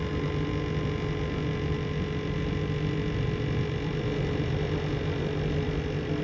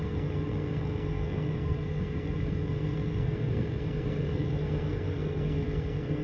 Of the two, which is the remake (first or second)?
second